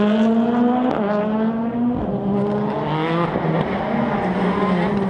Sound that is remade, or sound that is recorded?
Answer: recorded